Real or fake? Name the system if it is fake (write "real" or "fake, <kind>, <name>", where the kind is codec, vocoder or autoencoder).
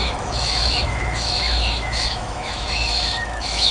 fake, autoencoder, DAC-VAE